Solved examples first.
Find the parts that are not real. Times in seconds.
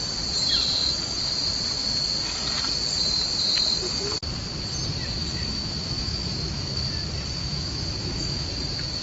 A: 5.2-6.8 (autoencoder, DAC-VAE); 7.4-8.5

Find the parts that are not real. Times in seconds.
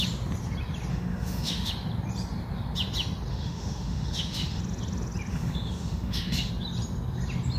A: 0.9-1.7 (autoencoder, DAC-VAE); 3.3-4.6; 5.3-6.5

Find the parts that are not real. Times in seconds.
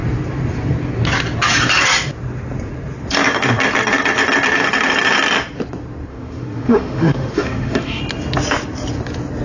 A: 6.1-8.0 (autoencoder, DAC-VAE)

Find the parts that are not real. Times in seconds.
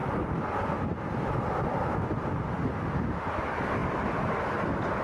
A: none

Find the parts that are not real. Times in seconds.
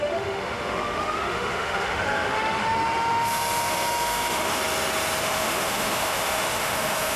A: 0.0-4.6 (autoencoder, DAC-VAE); 5.2-7.2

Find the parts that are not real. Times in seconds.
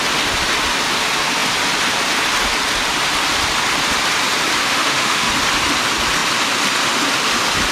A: 4.6-5.3 (autoencoder, DAC-VAE)